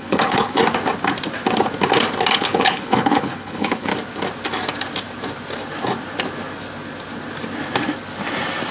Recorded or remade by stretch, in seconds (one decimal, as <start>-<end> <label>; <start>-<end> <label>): 0.0-0.6 remade; 0.6-2.3 recorded; 2.3-3.9 remade; 3.9-8.7 recorded